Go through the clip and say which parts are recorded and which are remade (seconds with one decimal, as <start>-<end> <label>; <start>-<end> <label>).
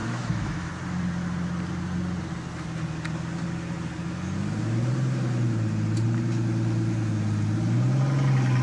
0.0-0.7 remade; 0.7-8.6 recorded